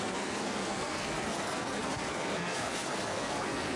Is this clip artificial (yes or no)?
yes